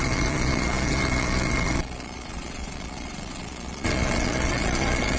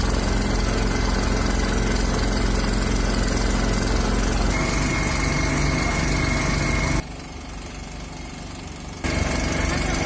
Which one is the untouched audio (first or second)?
second